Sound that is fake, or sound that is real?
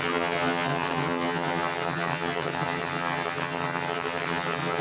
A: fake